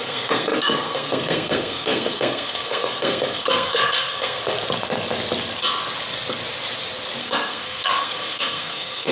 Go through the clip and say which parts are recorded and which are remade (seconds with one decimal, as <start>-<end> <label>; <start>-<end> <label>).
0.0-4.4 remade; 4.4-7.2 recorded; 7.2-9.1 remade